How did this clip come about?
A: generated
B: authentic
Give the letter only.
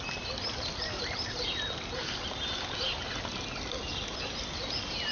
B